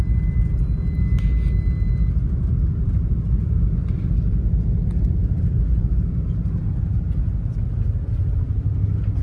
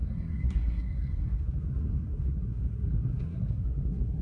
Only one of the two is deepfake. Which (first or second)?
second